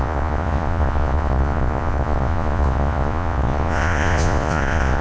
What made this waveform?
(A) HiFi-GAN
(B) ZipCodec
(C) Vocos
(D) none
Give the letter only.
C